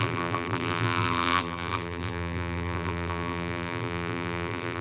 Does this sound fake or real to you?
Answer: fake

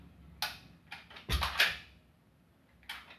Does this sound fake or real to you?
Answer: real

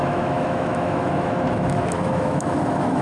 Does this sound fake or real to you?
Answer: fake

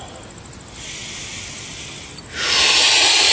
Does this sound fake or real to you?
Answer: real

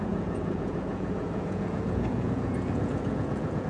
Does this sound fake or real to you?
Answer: fake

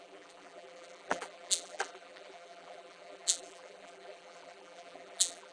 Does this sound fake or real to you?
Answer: fake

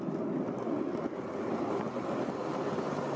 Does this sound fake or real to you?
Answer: real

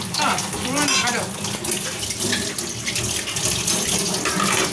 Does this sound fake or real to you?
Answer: real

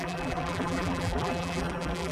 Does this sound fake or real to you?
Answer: fake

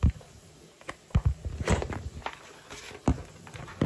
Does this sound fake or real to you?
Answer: real